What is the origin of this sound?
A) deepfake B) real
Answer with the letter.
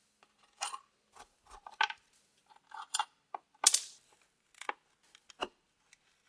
B